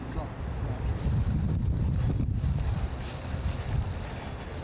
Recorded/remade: remade